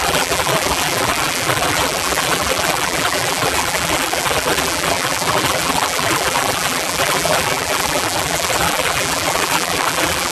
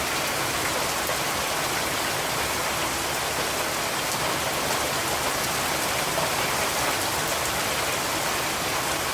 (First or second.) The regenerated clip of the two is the first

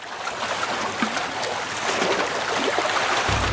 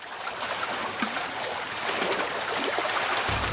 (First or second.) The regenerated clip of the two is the second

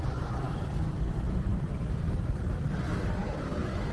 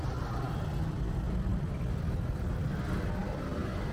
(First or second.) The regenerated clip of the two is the first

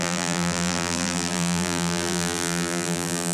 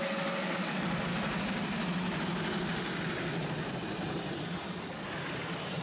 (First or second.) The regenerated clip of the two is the first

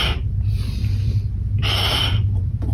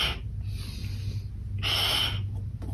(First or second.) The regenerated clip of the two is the first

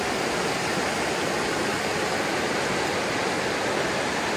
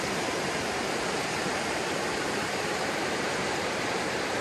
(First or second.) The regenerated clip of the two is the second